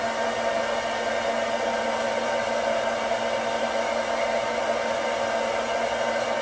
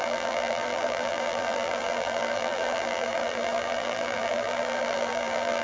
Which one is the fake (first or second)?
second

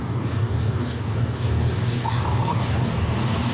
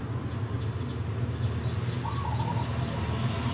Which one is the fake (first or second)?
first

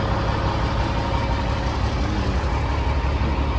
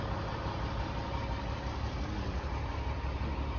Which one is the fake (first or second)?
second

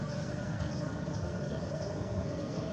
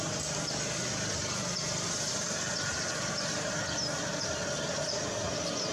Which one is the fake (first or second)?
first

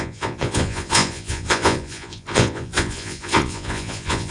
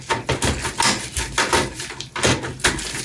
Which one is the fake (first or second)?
first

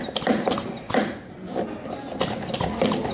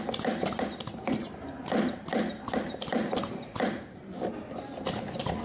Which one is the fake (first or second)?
second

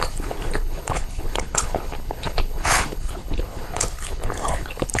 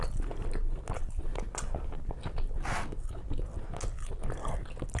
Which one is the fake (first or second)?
first